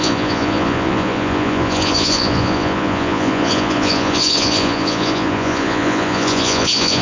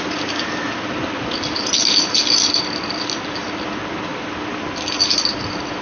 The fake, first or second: first